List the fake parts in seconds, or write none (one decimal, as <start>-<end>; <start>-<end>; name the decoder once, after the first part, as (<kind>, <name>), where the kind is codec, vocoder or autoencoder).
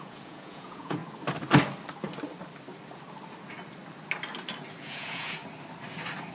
0.0-1.0 (vocoder, Vocos); 4.8-5.4